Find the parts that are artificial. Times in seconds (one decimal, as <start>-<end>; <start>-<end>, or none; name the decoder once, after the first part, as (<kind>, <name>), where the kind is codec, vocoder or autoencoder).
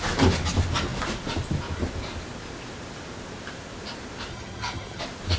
4.3-5.0 (vocoder, HiFi-GAN)